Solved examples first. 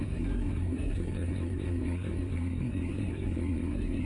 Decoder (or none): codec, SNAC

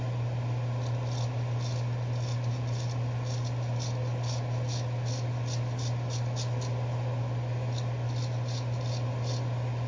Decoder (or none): none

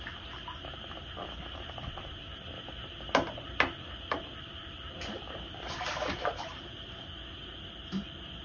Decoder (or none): none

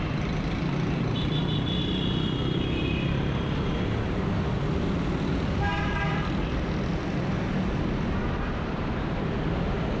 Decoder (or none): none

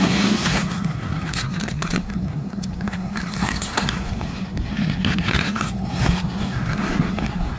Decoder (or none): codec, SNAC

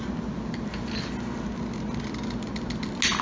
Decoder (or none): none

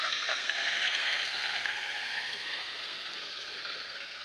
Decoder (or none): codec, SNAC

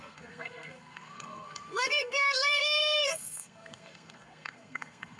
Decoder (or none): codec, SNAC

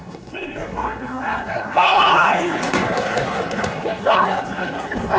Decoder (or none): codec, SNAC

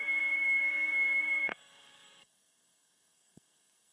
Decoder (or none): codec, SNAC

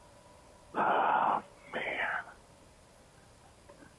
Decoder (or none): none